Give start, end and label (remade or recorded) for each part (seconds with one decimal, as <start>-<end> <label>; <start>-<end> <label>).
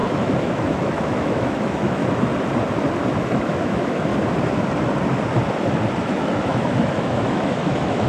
0.0-2.0 remade; 2.0-3.2 recorded; 3.2-4.1 remade; 4.1-6.0 recorded; 6.0-8.1 remade